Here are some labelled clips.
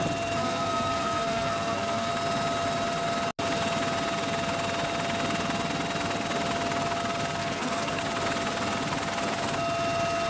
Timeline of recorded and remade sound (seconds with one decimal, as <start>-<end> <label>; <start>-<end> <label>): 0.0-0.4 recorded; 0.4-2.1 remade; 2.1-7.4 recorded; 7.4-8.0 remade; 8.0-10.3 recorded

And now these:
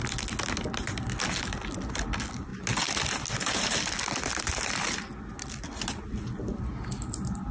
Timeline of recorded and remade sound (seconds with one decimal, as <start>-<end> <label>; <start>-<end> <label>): 0.0-7.5 recorded

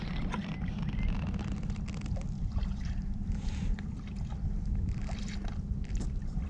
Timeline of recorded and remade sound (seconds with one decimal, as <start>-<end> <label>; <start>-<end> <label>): 0.0-2.6 recorded; 2.6-3.5 remade; 3.5-6.5 recorded

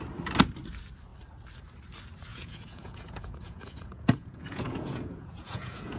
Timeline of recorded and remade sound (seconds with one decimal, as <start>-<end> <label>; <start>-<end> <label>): 0.0-2.3 recorded; 2.3-6.0 remade

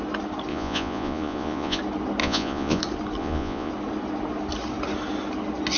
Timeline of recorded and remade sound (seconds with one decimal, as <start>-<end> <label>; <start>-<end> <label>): 0.0-0.5 recorded; 0.5-1.8 remade; 1.8-2.2 recorded; 2.2-2.8 remade; 2.8-3.2 recorded; 3.2-3.7 remade; 3.7-5.8 recorded